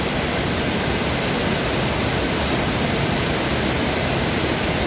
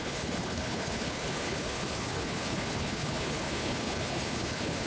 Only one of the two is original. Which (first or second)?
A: first